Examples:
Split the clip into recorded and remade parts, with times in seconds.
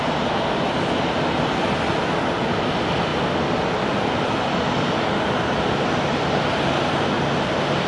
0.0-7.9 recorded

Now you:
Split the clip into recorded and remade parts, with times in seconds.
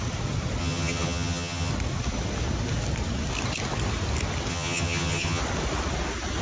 0.0-0.6 recorded; 0.6-1.7 remade; 1.7-4.5 recorded; 4.5-5.4 remade; 5.4-6.4 recorded